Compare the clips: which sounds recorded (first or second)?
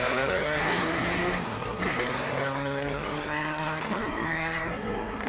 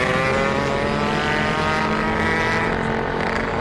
second